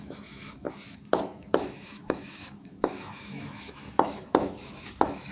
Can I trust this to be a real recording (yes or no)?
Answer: no